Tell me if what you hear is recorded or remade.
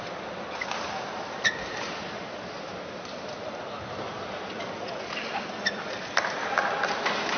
recorded